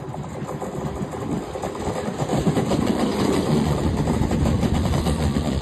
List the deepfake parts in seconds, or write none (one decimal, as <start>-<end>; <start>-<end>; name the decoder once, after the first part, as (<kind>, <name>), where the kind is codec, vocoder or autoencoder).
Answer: 2.3-3.9 (vocoder, Vocos); 4.5-5.6